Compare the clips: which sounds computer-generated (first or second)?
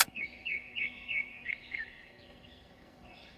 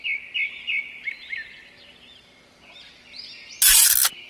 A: first